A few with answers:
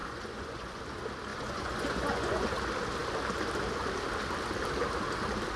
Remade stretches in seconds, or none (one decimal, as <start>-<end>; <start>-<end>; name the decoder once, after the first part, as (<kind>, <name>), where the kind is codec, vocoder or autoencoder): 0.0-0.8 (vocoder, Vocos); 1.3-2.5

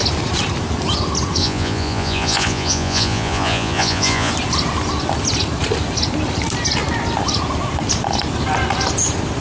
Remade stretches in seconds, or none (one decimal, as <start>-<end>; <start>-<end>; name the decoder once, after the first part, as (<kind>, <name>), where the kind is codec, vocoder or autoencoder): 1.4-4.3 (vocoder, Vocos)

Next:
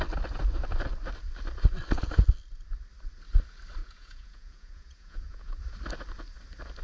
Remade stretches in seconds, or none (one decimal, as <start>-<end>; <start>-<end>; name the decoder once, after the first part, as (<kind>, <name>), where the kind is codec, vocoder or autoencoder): 3.8-5.6 (vocoder, Vocos)